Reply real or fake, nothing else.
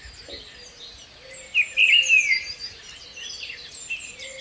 real